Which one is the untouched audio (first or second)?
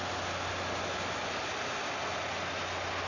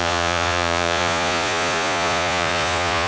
first